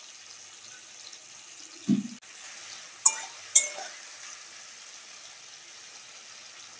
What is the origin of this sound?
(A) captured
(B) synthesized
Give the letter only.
A